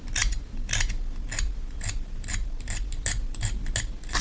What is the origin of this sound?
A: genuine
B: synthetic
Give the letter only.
A